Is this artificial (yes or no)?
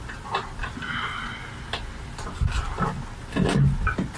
no